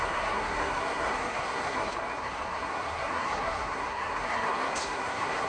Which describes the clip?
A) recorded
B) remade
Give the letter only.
B